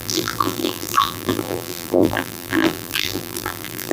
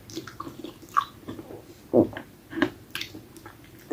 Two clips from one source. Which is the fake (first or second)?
first